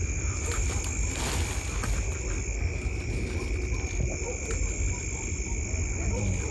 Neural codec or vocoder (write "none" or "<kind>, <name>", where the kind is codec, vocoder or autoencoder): none